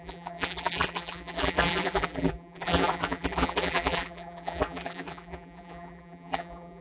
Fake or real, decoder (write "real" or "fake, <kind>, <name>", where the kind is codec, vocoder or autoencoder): fake, vocoder, BigVGAN v2